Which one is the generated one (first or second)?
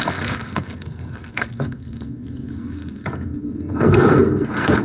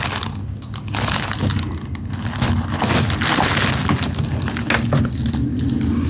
first